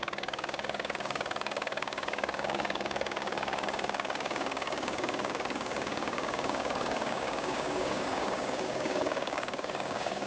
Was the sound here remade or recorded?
remade